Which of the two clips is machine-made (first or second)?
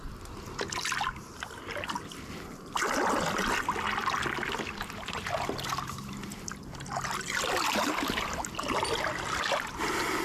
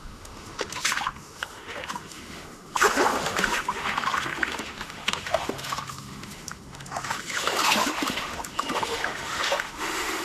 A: second